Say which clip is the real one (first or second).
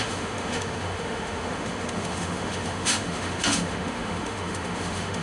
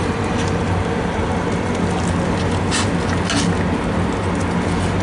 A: second